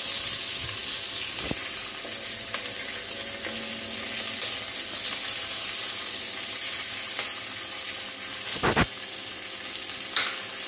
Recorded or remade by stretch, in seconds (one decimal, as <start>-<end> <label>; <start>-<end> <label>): 0.0-10.7 recorded